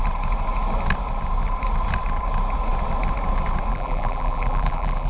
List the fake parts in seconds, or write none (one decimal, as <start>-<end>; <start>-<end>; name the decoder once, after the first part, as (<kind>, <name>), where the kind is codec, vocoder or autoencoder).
3.7-5.1 (vocoder, BigVGAN v2)